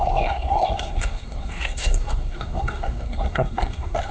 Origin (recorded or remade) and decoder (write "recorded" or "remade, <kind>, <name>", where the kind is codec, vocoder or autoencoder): remade, codec, SNAC